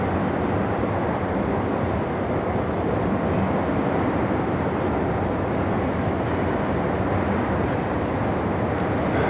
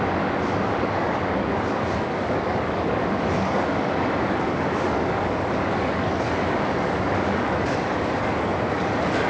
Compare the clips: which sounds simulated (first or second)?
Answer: second